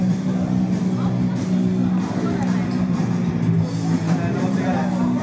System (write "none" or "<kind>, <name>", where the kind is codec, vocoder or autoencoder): none